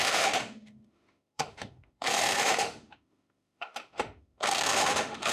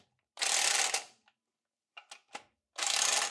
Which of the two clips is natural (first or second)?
second